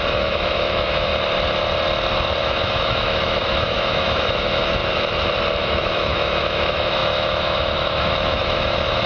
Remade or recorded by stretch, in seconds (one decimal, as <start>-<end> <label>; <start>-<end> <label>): 0.0-1.1 remade; 1.1-2.4 recorded; 2.4-4.8 remade; 4.8-5.6 recorded; 5.6-9.1 remade